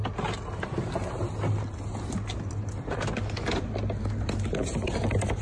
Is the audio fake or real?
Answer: real